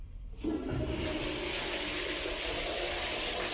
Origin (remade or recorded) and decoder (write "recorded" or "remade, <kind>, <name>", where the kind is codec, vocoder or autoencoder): recorded